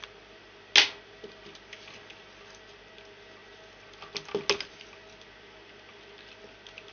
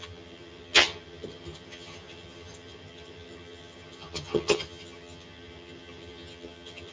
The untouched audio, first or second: first